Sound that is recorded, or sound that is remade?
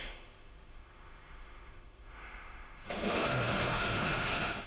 remade